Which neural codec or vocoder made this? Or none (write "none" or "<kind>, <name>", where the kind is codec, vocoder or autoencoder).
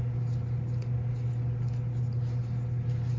none